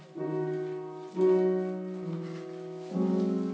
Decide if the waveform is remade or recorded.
recorded